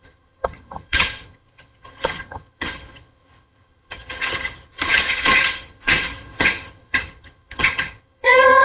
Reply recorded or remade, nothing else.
remade